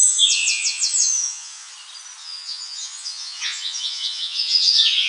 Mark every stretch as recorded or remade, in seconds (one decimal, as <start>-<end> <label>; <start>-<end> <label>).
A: 0.0-1.7 remade; 1.7-2.2 recorded; 2.2-5.1 remade